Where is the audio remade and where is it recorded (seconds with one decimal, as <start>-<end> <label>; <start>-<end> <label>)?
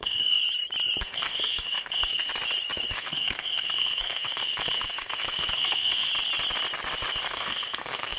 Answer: 0.0-0.4 remade; 0.4-1.0 recorded; 1.0-2.3 remade; 2.3-2.9 recorded; 2.9-6.1 remade; 6.1-7.2 recorded; 7.2-8.2 remade